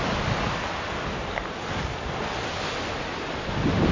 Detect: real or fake real